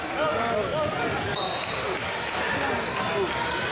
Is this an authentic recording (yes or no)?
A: yes